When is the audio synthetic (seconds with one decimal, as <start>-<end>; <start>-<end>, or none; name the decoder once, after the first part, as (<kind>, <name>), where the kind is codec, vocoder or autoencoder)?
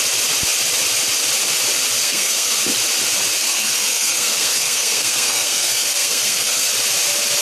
2.0-2.6 (codec, SNAC); 3.4-6.7